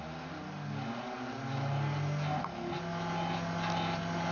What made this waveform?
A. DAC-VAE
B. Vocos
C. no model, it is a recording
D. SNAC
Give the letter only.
C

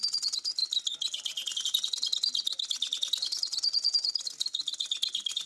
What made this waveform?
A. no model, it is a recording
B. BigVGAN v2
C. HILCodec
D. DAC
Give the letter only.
A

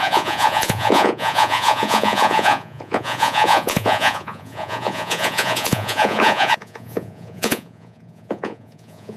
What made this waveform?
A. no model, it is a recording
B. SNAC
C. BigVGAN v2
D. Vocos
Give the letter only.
D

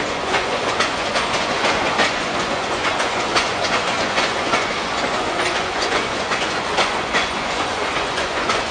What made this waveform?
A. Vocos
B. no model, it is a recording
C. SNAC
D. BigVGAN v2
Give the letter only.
A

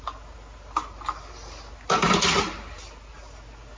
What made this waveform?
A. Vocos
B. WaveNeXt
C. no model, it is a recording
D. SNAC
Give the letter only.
C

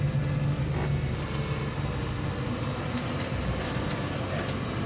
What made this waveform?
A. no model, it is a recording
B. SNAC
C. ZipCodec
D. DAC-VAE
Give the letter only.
A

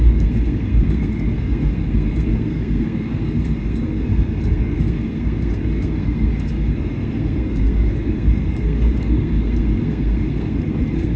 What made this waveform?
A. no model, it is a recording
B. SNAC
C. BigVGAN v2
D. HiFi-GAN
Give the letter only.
B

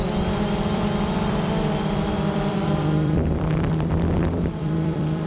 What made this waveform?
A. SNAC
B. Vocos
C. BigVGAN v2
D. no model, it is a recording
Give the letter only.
C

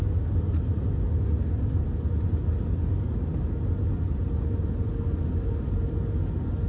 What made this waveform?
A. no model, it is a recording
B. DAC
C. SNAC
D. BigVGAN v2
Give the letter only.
A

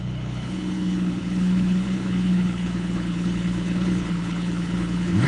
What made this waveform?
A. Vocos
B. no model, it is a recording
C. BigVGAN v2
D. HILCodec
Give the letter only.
D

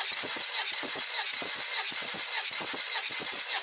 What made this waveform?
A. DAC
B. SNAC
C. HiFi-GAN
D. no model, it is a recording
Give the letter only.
D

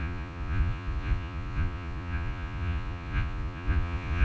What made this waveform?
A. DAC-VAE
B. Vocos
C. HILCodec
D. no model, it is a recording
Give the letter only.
B